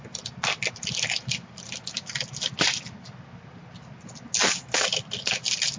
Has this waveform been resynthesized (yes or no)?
no